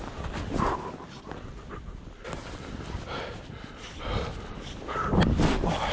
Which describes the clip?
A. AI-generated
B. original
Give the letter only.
B